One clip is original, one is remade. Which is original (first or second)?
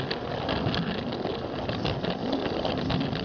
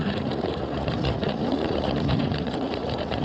first